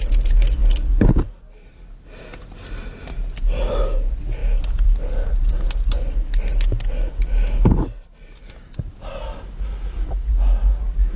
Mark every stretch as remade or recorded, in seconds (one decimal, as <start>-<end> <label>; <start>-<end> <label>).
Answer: 0.0-11.2 recorded